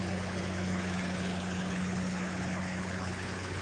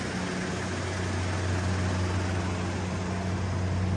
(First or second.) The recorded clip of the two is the second